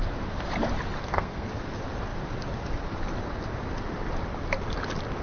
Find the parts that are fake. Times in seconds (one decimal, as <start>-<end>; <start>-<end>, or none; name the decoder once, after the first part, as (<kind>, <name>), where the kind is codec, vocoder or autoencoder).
1.0-1.5 (codec, SNAC)